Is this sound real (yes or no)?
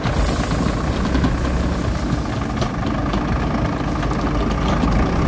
yes